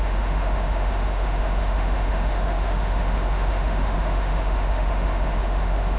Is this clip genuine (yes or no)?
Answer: no